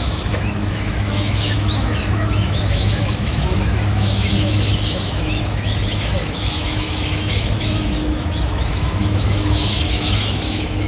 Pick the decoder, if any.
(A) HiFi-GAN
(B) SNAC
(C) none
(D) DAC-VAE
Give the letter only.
D